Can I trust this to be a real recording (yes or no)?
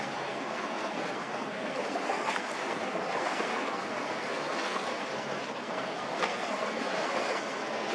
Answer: no